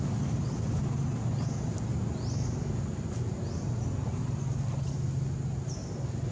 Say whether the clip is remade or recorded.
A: recorded